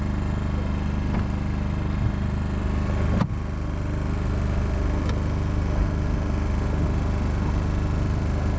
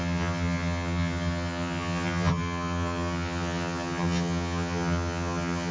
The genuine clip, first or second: first